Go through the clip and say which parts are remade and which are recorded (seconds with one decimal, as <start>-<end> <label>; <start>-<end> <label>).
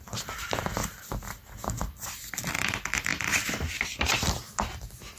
0.0-0.8 remade; 0.8-1.8 recorded; 1.8-5.2 remade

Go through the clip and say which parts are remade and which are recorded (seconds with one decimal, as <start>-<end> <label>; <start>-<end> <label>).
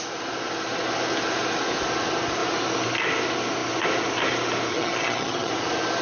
0.0-4.7 recorded; 4.7-5.5 remade; 5.5-6.0 recorded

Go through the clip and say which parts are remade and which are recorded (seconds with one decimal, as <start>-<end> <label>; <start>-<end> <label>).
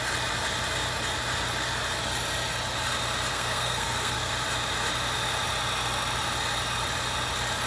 0.0-3.3 recorded; 3.3-4.3 remade; 4.3-7.7 recorded